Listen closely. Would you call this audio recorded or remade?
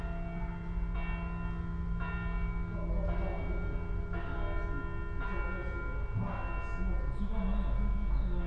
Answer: recorded